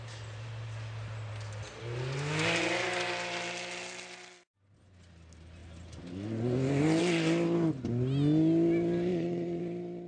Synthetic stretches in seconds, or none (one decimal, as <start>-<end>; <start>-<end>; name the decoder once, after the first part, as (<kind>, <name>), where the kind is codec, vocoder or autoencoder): 9.1-9.6 (vocoder, Vocos)

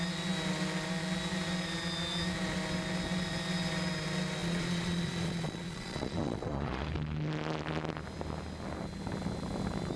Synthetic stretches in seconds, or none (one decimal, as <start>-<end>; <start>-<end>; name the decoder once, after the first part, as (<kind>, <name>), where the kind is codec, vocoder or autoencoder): 4.4-6.9 (vocoder, Vocos)